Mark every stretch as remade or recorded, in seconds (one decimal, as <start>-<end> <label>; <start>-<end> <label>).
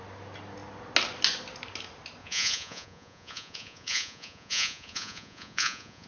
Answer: 0.0-2.2 recorded; 2.2-6.1 remade